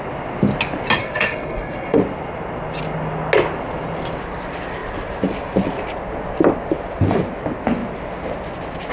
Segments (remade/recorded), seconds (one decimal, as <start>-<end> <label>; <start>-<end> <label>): 0.0-1.0 recorded; 1.0-2.0 remade; 2.0-8.9 recorded